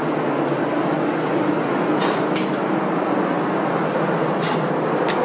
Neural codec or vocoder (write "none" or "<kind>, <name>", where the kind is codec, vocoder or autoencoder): none